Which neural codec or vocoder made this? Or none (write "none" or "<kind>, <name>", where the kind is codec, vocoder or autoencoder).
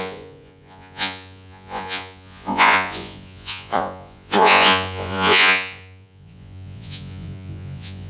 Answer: vocoder, Vocos